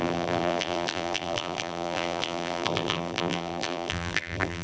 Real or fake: fake